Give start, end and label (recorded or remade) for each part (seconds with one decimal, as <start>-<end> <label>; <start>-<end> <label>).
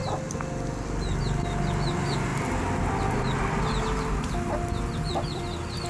0.0-5.9 recorded